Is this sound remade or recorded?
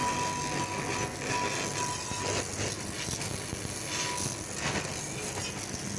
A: recorded